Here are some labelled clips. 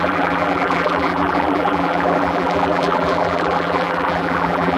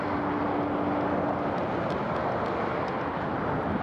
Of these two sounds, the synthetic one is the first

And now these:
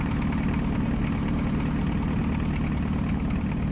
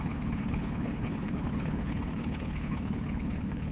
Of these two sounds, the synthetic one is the second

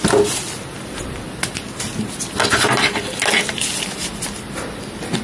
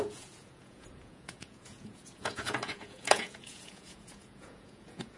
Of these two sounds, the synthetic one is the second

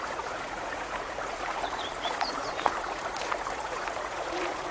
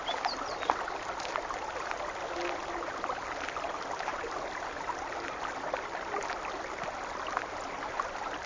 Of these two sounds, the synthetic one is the first